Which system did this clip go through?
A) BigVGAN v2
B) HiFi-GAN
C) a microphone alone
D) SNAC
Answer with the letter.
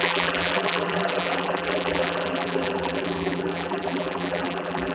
A